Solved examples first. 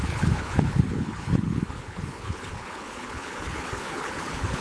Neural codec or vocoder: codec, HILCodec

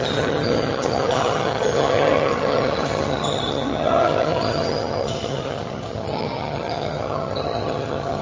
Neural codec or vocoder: vocoder, HiFi-GAN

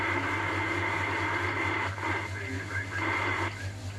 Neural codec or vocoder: none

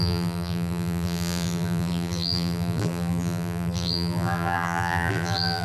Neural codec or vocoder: vocoder, BigVGAN v2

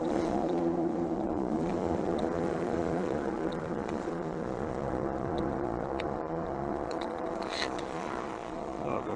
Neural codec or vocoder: vocoder, Vocos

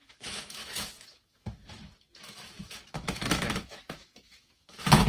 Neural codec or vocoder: autoencoder, DAC-VAE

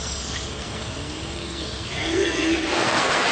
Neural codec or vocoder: codec, SNAC